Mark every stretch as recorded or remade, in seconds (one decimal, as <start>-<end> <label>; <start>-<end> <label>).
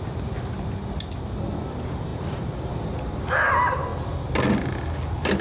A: 0.0-2.1 recorded; 2.1-3.2 remade; 3.2-5.4 recorded